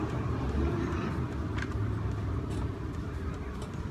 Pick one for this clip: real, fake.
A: fake